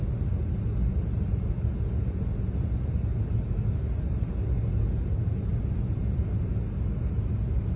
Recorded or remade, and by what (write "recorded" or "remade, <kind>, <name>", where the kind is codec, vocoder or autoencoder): recorded